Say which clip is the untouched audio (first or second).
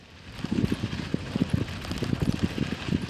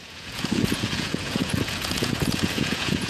first